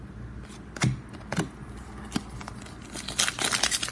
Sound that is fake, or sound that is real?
real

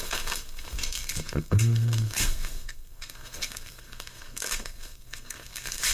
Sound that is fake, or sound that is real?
fake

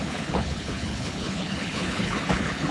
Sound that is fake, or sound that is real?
fake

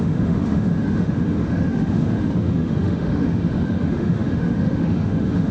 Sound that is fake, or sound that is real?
fake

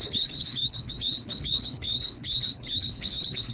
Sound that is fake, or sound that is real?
fake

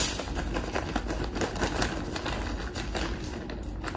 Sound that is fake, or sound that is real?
real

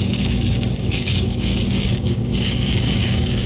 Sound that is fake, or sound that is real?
fake